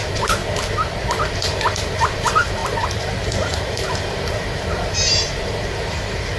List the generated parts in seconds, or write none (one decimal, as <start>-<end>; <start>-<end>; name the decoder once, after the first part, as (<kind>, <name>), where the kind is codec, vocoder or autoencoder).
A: 0.0-0.4 (vocoder, BigVGAN v2); 1.3-6.4